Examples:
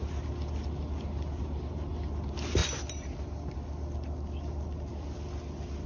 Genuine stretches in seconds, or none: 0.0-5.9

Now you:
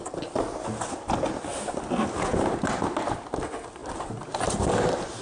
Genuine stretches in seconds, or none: 0.0-5.2

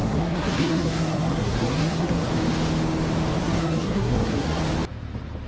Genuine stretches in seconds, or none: 2.3-3.4; 4.6-5.5